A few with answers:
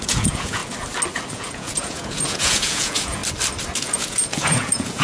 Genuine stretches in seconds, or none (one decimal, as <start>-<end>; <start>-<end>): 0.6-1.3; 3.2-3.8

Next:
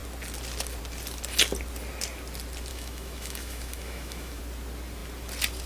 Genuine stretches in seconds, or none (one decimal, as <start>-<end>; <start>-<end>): 0.0-2.7; 4.4-5.7

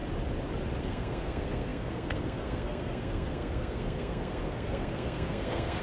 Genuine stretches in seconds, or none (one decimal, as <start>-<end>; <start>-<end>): 0.0-0.8

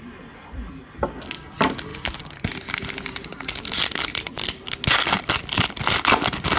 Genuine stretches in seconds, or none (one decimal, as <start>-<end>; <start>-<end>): 0.0-6.6

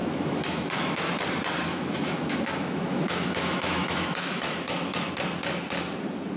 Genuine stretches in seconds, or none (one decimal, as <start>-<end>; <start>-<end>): 1.0-1.7; 5.1-6.4

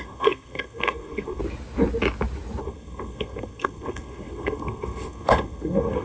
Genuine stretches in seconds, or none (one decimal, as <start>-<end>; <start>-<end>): 1.4-2.6

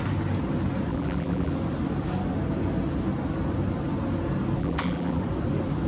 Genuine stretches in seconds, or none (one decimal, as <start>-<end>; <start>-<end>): 0.0-0.9; 1.5-4.6; 5.2-5.9

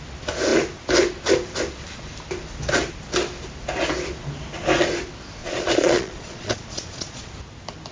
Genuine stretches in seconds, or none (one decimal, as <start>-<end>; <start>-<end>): 0.0-5.4; 7.3-7.9